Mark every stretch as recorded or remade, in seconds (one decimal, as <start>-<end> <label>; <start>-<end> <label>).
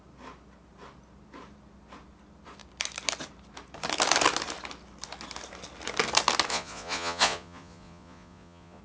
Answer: 0.0-6.5 recorded; 6.5-8.8 remade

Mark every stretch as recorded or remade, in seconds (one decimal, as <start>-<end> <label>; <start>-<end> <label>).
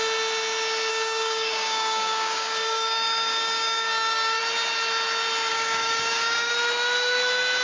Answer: 0.0-0.9 recorded; 0.9-4.4 remade; 4.4-5.5 recorded; 5.5-6.5 remade; 6.5-7.6 recorded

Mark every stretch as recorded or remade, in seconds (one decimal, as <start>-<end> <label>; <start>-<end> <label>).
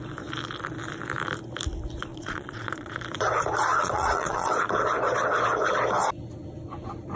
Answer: 0.0-2.1 recorded; 2.1-3.0 remade; 3.0-3.7 recorded; 3.7-4.5 remade; 4.5-7.2 recorded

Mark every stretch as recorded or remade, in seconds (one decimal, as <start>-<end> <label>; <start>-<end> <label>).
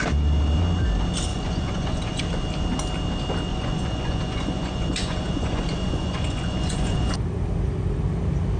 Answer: 0.0-1.3 recorded; 1.3-2.2 remade; 2.2-3.5 recorded; 3.5-7.1 remade; 7.1-8.6 recorded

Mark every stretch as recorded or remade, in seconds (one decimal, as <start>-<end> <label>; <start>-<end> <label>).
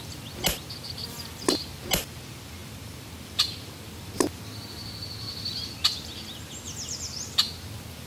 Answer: 0.0-8.1 recorded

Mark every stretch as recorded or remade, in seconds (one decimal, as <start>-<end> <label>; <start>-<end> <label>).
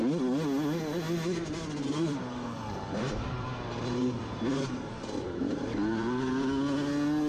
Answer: 0.0-1.9 recorded; 1.9-6.3 remade; 6.3-7.3 recorded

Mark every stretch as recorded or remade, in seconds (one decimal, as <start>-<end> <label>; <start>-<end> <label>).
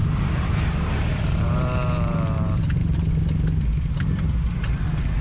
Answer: 0.0-3.1 remade; 3.1-5.2 recorded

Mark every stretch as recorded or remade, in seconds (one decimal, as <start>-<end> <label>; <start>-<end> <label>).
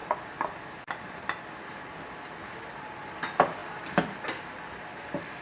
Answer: 0.0-5.4 recorded